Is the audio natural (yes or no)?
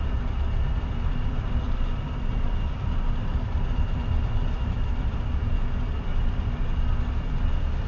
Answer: no